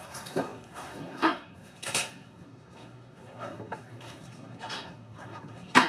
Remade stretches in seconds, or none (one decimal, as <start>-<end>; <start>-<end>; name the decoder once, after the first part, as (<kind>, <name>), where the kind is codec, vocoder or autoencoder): 0.0-5.9 (codec, SNAC)